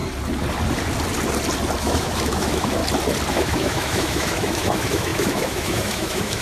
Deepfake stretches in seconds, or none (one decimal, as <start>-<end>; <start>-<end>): 1.8-2.8; 3.3-6.4